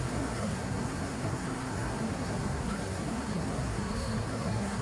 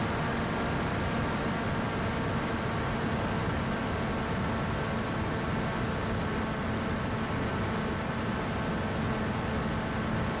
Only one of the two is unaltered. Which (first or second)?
second